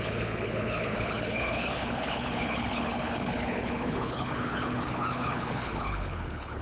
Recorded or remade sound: remade